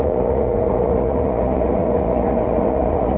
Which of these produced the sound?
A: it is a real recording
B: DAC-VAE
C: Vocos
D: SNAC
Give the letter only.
C